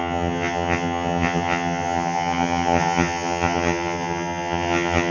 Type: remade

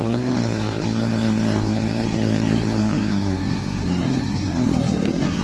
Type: remade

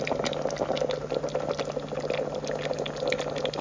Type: recorded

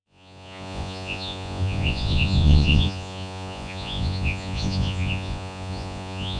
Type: remade